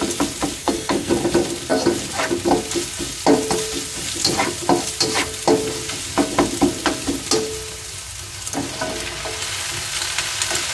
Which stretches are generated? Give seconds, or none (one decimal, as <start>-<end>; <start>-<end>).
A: 0.6-1.1